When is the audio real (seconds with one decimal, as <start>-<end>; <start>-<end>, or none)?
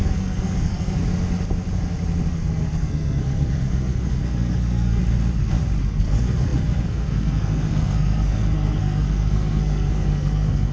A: 1.0-2.3; 5.0-5.9